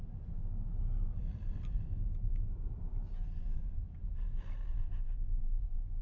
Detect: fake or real fake